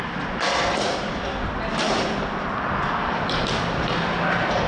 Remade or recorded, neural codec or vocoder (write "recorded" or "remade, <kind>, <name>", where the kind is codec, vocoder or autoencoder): recorded